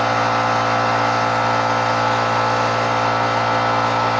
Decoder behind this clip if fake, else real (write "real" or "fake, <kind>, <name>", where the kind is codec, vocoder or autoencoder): real